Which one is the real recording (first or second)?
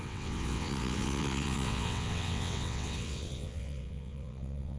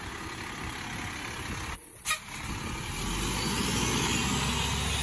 second